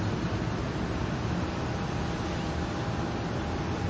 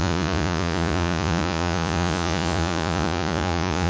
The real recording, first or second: first